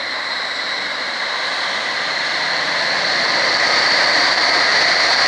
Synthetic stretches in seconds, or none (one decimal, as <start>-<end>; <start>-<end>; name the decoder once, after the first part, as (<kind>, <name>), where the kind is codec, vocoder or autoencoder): 0.0-1.5 (vocoder, BigVGAN v2); 3.1-5.3